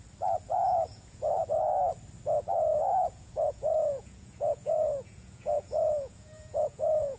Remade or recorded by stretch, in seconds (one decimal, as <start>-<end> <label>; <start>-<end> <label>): 0.0-0.9 recorded; 0.9-1.4 remade; 1.4-2.7 recorded; 2.7-7.2 remade